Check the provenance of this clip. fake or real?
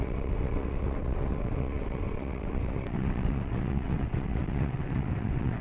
fake